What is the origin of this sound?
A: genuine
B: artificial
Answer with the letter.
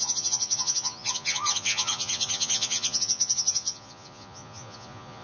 B